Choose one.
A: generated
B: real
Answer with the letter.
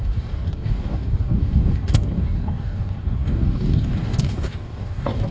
A